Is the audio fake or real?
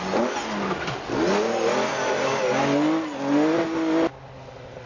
real